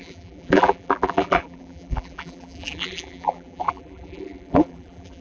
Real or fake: fake